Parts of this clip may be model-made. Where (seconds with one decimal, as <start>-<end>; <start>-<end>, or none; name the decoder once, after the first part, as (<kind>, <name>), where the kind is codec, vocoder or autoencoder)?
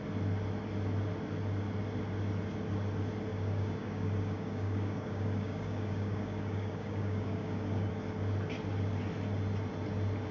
3.3-7.9 (codec, DAC)